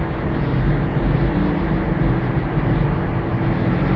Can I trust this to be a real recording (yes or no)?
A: yes